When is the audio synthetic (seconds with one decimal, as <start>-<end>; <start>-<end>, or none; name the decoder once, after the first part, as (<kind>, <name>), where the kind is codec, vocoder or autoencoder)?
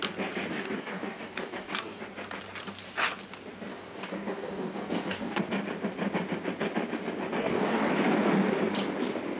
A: 0.5-2.0 (codec, DAC); 3.7-5.4; 7.4-7.9